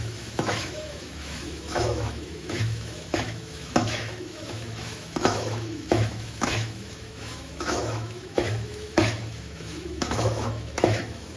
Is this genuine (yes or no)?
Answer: no